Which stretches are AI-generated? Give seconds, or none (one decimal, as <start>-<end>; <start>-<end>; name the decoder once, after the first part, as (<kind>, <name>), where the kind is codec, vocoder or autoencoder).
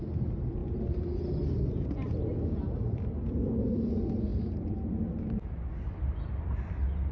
none